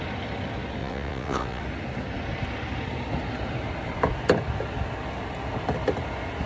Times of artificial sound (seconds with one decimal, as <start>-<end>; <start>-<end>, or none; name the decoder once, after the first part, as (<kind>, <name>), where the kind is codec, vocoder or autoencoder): 0.8-1.6 (vocoder, WaveNeXt)